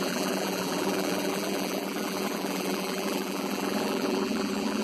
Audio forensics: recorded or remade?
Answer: remade